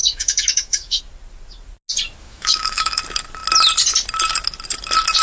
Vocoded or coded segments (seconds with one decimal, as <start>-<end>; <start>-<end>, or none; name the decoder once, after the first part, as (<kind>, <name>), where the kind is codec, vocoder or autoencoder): 0.0-1.0 (autoencoder, DAC-VAE); 2.2-3.0